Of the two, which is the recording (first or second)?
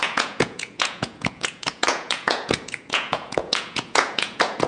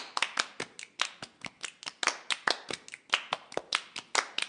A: second